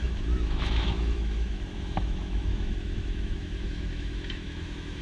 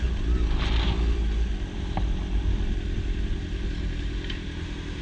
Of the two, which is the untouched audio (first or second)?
second